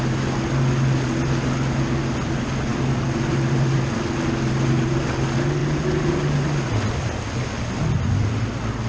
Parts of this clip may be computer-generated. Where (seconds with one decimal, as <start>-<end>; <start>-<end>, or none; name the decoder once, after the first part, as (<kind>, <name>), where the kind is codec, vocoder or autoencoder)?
none